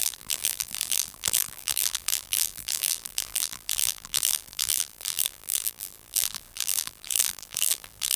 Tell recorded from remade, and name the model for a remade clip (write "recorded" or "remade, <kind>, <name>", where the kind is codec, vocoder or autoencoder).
remade, vocoder, BigVGAN v2